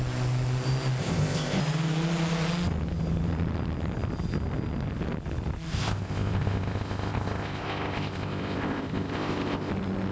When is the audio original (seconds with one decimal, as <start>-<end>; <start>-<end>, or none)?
0.0-1.0; 1.6-5.7; 9.7-10.1